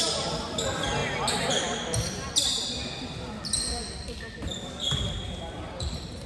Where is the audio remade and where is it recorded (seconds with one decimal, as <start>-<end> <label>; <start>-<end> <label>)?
0.0-1.0 remade; 1.0-1.5 recorded; 1.5-6.3 remade

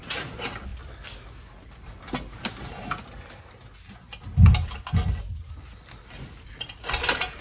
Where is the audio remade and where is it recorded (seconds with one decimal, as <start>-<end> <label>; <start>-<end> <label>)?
0.0-7.4 recorded